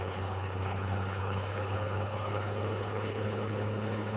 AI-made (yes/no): yes